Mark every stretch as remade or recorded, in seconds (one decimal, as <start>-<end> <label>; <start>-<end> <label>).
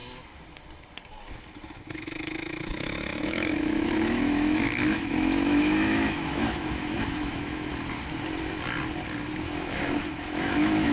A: 0.0-1.8 recorded; 1.8-7.7 remade; 7.7-9.4 recorded; 9.4-10.9 remade